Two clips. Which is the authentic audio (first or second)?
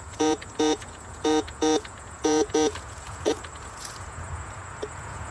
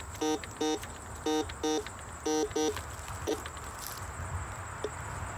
second